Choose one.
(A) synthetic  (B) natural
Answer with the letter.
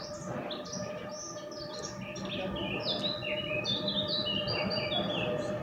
B